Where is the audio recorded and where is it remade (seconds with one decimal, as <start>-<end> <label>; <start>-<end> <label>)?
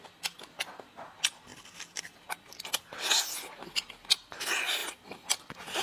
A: 0.0-5.8 recorded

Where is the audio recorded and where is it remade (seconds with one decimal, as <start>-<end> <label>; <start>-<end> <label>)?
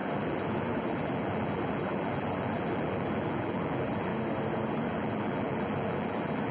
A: 0.0-4.1 remade; 4.1-4.7 recorded; 4.7-6.5 remade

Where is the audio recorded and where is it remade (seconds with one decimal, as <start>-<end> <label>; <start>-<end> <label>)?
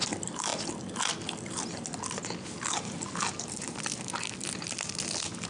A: 0.0-5.5 recorded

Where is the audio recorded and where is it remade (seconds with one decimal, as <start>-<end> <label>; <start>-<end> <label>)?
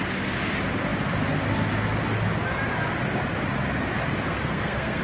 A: 0.0-4.3 recorded; 4.3-5.0 remade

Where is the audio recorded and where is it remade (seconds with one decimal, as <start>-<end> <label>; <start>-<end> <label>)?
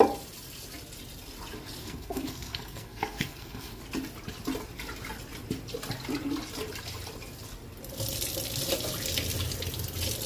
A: 0.0-1.8 recorded; 1.8-3.8 remade; 3.8-10.3 recorded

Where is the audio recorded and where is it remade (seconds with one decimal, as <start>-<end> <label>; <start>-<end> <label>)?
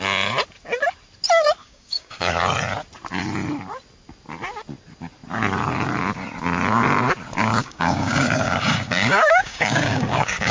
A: 0.0-1.6 recorded; 1.6-2.4 remade; 2.4-7.5 recorded; 7.5-10.5 remade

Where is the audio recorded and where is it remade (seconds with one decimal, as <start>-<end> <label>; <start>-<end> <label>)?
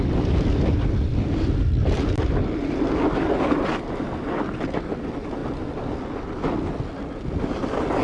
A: 0.0-8.0 recorded